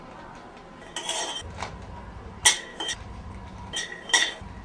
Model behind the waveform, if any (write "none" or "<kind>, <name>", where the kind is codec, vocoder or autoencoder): none